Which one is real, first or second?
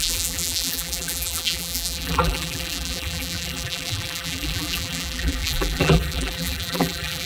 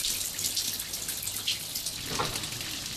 second